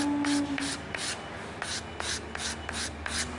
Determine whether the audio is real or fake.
real